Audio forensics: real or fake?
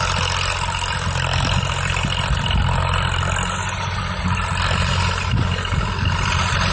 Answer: real